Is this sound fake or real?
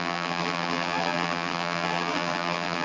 fake